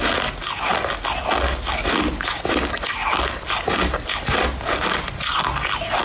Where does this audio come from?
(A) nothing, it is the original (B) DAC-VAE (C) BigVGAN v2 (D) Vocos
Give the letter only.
A